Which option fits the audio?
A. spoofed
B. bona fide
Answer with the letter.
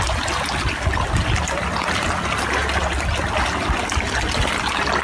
B